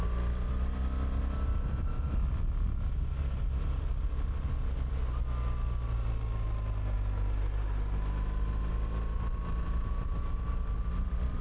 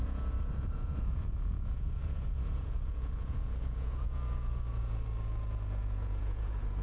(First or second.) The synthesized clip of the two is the second